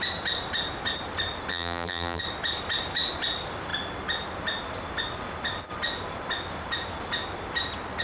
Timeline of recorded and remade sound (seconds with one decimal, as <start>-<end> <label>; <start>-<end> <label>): 0.0-1.5 recorded; 1.5-2.2 remade; 2.2-8.0 recorded

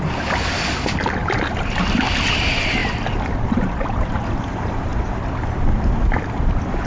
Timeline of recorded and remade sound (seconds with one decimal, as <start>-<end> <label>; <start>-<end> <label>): 0.0-1.2 recorded; 1.2-2.0 remade; 2.0-2.8 recorded; 2.8-4.1 remade; 4.1-6.9 recorded

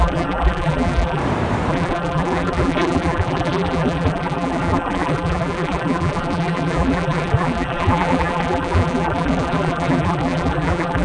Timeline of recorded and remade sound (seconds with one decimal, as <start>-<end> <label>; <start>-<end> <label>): 0.0-1.2 remade; 1.2-1.7 recorded; 1.7-11.0 remade

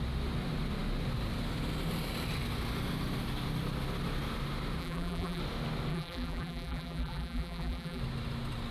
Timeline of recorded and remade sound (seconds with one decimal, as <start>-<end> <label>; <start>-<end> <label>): 0.0-4.8 recorded; 4.8-5.4 remade; 5.4-5.9 recorded; 5.9-8.0 remade; 8.0-8.7 recorded

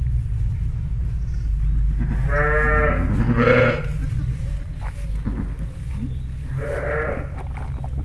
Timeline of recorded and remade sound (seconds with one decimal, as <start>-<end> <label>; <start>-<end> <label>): 0.0-4.0 recorded; 4.0-4.8 remade; 4.8-8.0 recorded

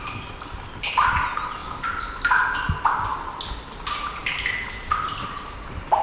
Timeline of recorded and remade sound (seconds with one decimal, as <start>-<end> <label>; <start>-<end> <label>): 0.0-4.2 recorded; 4.2-4.8 remade; 4.8-6.0 recorded